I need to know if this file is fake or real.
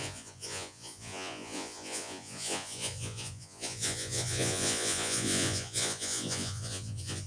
fake